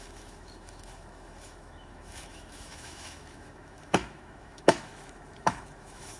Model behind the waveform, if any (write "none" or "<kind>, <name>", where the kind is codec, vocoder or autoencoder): autoencoder, DAC-VAE